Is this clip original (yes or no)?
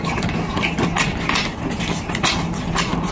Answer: yes